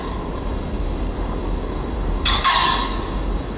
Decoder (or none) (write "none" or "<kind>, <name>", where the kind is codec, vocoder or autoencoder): codec, DAC